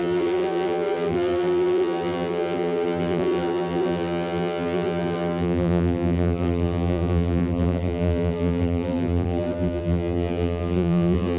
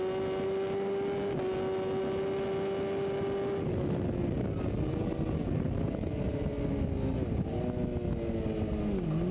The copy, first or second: first